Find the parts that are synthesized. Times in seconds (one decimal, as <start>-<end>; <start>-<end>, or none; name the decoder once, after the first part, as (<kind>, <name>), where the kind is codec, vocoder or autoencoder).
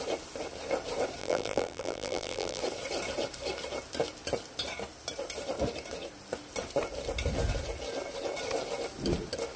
1.2-2.6 (vocoder, BigVGAN v2)